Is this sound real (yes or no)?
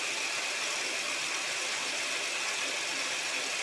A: yes